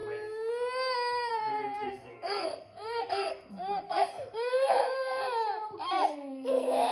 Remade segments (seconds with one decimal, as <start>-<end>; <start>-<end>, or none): 1.3-5.2; 6.1-6.9